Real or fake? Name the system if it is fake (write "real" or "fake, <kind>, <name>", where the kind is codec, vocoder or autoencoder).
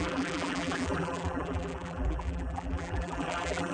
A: fake, vocoder, BigVGAN v2